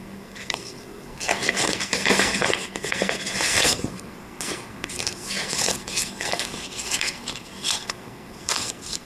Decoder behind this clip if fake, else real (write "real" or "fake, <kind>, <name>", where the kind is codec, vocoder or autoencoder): fake, codec, SNAC